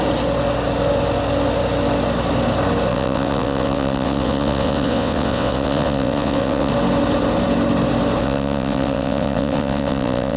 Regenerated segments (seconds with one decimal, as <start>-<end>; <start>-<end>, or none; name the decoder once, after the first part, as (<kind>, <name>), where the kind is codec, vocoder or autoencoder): 2.9-6.7 (vocoder, WaveNeXt); 8.2-10.4